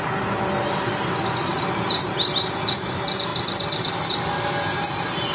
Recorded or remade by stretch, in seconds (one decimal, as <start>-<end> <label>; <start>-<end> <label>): 0.0-1.5 recorded; 1.5-2.1 remade; 2.1-3.3 recorded; 3.3-4.0 remade; 4.0-5.3 recorded